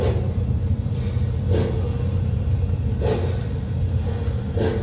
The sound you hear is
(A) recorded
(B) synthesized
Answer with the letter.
A